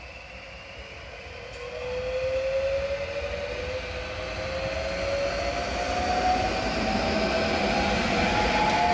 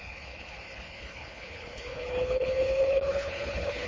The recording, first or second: first